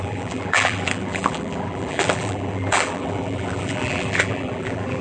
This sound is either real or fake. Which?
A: fake